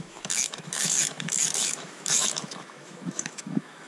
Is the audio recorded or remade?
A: remade